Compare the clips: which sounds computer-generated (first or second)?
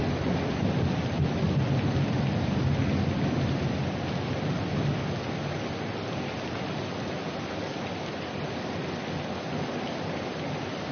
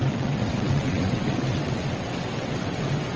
second